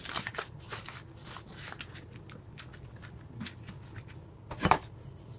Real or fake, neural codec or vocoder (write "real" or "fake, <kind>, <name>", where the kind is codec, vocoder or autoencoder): real